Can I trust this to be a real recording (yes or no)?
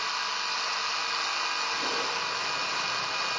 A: yes